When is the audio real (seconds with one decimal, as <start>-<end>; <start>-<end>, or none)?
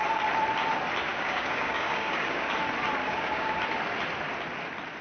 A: 0.0-1.1; 2.5-3.0; 3.6-5.0